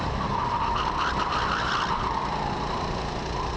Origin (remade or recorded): recorded